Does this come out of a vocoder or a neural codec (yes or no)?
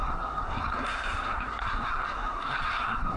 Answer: yes